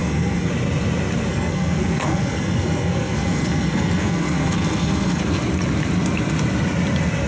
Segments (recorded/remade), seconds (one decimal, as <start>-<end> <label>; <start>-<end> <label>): 0.0-0.5 remade; 0.5-1.3 recorded; 1.3-5.2 remade; 5.2-7.3 recorded